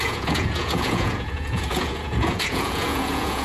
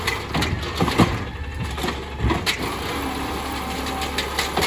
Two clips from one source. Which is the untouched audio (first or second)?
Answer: second